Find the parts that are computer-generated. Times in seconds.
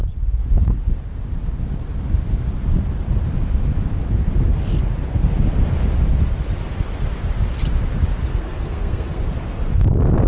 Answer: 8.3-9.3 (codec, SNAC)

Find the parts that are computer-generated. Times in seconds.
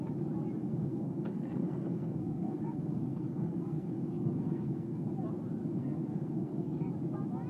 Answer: 0.6-5.1 (codec, SNAC); 5.6-6.9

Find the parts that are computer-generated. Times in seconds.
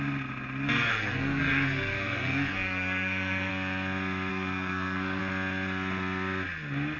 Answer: 0.9-3.5 (codec, SNAC); 4.3-5.2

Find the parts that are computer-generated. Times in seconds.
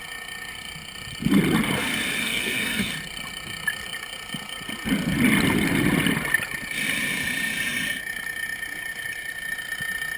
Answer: 2.2-2.9 (codec, SNAC)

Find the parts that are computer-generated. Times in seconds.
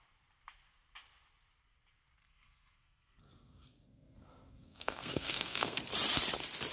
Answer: 2.2-5.8 (codec, SNAC)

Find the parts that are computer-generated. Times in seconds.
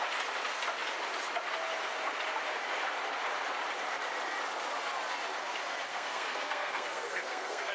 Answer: 5.9-7.7 (codec, SNAC)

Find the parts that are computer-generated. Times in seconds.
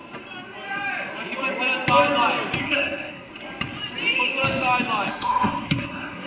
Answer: 2.6-3.3 (codec, SNAC); 5.1-6.3